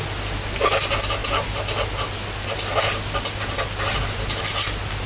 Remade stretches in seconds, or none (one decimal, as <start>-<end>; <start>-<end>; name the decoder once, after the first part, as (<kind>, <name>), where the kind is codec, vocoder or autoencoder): none